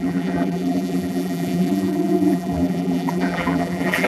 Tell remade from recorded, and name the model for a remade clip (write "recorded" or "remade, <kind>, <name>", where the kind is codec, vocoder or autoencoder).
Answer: remade, vocoder, BigVGAN v2